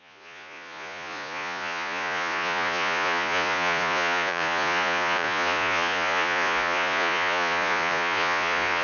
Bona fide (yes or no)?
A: no